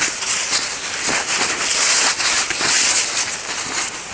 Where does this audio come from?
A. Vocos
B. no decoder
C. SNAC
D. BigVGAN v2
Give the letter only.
B